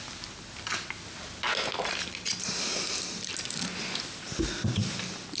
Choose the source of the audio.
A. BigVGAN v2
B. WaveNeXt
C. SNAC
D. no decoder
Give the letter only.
D